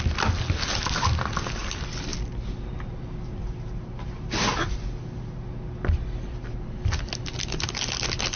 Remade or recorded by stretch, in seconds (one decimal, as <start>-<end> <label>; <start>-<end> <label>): 0.0-8.4 recorded